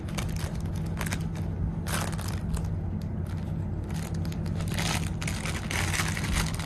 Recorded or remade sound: recorded